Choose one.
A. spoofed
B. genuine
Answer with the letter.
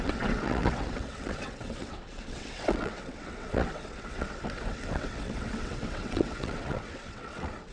A